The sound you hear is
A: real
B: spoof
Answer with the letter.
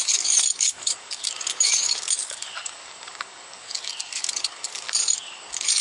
B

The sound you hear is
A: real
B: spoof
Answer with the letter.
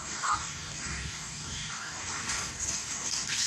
B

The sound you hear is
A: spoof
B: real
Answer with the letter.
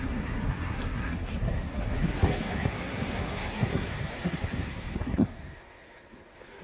A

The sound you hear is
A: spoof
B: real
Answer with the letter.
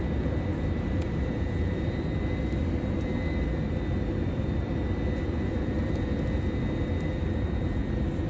B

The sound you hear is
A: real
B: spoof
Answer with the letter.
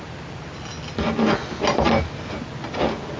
A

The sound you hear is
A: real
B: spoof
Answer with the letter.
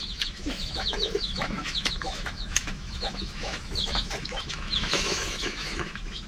B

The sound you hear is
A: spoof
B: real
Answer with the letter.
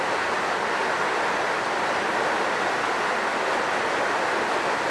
B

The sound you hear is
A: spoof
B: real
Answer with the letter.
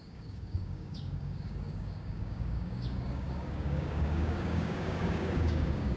A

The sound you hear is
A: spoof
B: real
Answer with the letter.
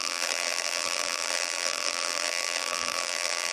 A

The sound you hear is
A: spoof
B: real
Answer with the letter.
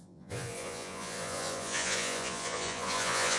A